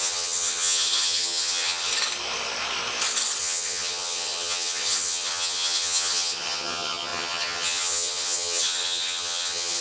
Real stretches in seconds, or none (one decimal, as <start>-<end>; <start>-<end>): 1.9-3.4